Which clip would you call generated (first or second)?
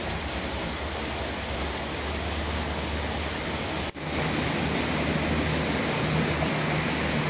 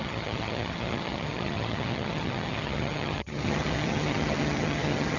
second